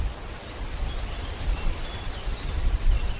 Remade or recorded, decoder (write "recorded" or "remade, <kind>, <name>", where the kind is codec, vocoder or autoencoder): recorded